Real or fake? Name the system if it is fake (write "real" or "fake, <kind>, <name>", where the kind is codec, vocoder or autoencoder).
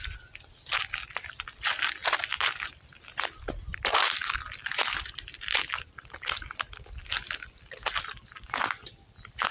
real